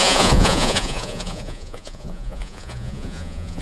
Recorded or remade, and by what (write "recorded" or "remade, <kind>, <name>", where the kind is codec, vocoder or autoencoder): remade, vocoder, Vocos